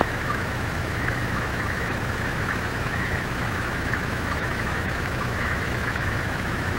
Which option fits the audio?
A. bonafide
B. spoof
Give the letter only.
B